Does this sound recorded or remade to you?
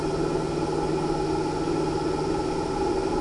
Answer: recorded